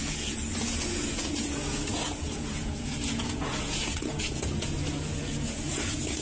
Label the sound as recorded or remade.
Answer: remade